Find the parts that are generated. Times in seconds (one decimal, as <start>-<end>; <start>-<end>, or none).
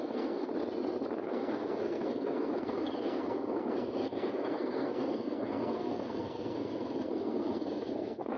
0.0-0.5; 1.2-8.4